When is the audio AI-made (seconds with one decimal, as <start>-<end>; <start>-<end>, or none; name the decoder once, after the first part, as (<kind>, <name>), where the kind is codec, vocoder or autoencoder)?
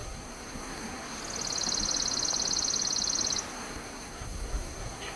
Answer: 0.0-1.2 (codec, SNAC); 3.5-5.2